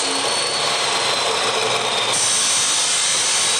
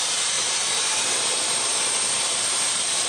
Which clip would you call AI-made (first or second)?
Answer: second